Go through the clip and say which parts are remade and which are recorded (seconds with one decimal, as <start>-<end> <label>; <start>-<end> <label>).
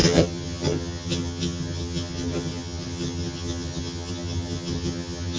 0.0-5.4 remade